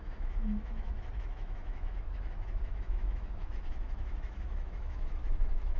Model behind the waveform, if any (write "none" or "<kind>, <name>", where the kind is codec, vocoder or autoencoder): autoencoder, DAC-VAE